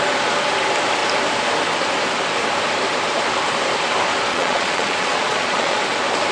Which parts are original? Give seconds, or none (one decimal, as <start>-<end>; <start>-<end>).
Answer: 0.0-4.3; 5.8-6.3